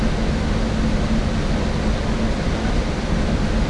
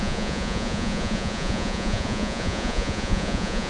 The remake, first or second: second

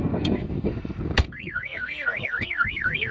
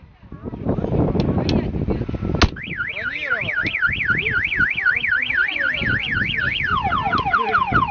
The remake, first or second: first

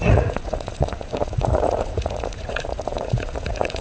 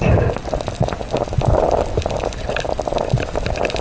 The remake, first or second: first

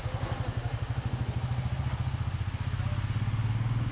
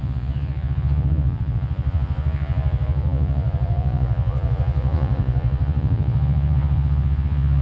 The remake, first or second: second